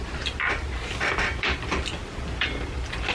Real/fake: real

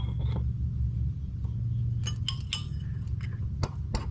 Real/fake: real